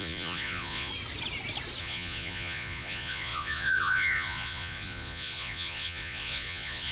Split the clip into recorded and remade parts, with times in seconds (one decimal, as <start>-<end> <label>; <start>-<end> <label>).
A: 0.0-0.9 remade; 0.9-1.8 recorded; 1.8-6.9 remade

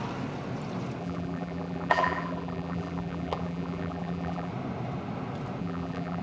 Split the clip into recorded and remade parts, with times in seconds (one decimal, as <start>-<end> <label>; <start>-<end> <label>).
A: 0.0-1.0 recorded; 1.0-4.5 remade; 4.5-5.6 recorded; 5.6-6.2 remade

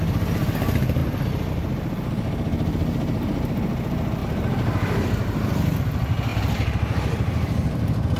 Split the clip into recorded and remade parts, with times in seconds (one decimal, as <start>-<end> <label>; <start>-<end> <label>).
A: 0.0-8.2 recorded

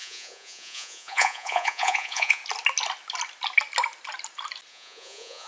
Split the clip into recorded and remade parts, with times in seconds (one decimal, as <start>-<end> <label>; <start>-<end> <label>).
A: 0.0-2.4 remade; 2.4-4.7 recorded; 4.7-5.5 remade

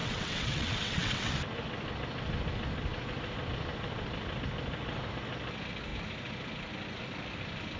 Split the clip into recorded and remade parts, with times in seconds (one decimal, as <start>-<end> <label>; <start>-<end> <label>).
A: 0.0-1.3 remade; 1.3-7.8 recorded

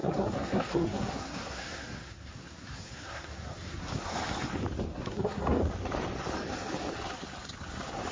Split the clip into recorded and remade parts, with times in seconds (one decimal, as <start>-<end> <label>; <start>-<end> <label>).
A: 0.0-4.1 remade; 4.1-4.9 recorded; 4.9-5.6 remade; 5.6-8.1 recorded

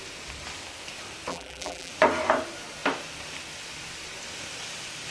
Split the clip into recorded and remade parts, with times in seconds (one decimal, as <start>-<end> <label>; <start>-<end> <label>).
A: 0.0-1.3 recorded; 1.3-1.9 remade; 1.9-5.1 recorded